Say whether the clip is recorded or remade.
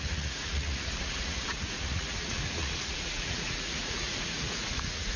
remade